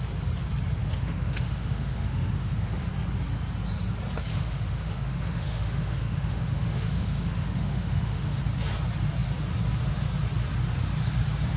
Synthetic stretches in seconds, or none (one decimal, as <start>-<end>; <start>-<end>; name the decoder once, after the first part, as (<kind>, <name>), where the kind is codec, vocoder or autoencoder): 0.8-2.9 (autoencoder, DAC-VAE); 4.3-8.4